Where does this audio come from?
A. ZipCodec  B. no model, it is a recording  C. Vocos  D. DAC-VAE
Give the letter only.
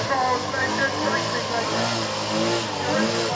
B